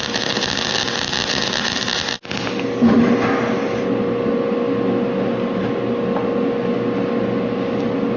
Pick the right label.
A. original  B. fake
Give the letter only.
A